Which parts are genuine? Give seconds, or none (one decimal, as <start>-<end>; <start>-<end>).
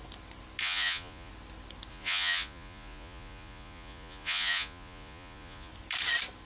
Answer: 0.0-0.6; 1.3-1.9; 5.7-6.4